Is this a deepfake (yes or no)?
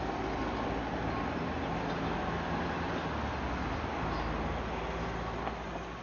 no